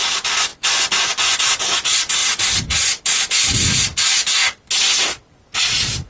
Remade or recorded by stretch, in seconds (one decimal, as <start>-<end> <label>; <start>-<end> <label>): 0.0-0.5 recorded; 0.5-1.4 remade; 1.4-6.1 recorded